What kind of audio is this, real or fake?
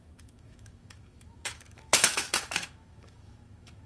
fake